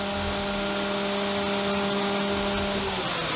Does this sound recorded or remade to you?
recorded